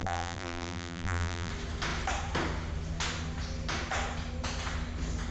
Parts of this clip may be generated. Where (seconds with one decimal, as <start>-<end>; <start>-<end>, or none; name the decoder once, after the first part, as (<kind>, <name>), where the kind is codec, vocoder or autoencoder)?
0.0-1.5 (vocoder, BigVGAN v2)